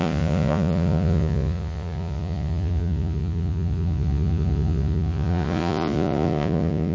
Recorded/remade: remade